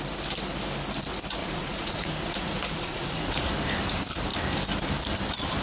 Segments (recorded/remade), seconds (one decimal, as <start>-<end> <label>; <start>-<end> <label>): 0.0-1.4 recorded; 1.4-3.5 remade; 3.5-5.6 recorded